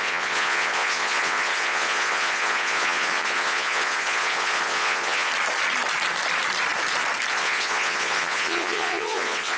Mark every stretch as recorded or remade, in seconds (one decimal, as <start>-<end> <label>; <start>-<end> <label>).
0.0-5.3 remade; 5.3-7.3 recorded; 7.3-9.6 remade